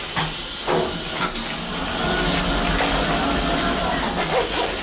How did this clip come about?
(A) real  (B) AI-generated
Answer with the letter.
A